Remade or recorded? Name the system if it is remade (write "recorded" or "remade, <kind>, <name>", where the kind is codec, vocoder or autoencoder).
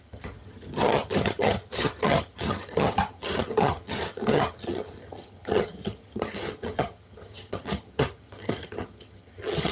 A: remade, vocoder, HiFi-GAN